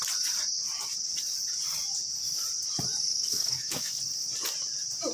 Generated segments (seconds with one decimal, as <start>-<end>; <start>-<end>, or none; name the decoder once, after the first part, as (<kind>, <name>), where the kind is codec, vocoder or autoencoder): 3.1-4.0 (autoencoder, DAC-VAE)